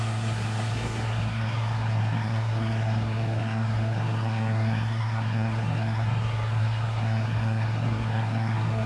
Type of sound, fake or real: fake